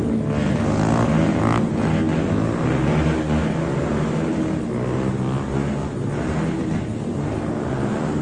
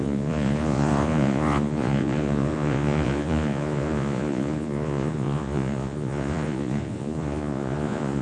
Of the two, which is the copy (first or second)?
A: second